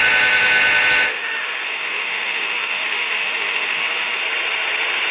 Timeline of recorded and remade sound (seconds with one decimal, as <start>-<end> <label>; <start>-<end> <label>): 0.0-1.1 recorded; 1.1-4.2 remade; 4.2-5.1 recorded